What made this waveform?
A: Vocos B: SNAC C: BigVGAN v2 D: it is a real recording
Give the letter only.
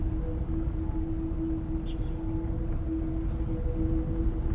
D